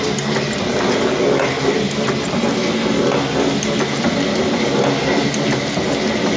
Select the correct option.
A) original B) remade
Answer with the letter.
A